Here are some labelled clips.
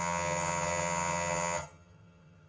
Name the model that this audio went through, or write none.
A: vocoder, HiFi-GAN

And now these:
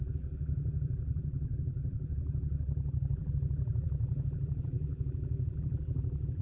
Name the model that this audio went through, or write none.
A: vocoder, BigVGAN v2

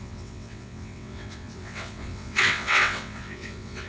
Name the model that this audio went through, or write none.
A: vocoder, WaveNeXt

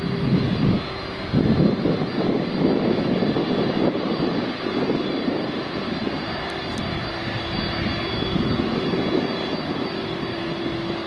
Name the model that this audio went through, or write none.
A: none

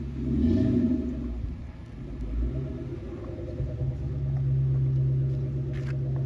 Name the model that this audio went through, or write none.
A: none